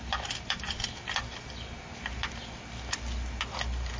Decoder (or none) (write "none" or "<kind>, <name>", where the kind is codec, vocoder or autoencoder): none